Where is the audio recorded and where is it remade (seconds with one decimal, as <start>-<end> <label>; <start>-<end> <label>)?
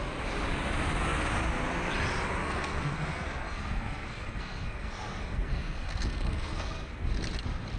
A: 0.0-2.4 recorded; 2.4-7.1 remade; 7.1-7.8 recorded